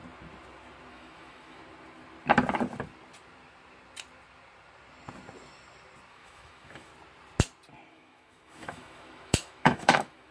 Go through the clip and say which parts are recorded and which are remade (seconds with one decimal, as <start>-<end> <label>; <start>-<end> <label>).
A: 0.0-0.9 recorded; 0.9-1.6 remade; 1.6-6.1 recorded; 6.1-6.9 remade; 6.9-7.9 recorded; 7.9-10.3 remade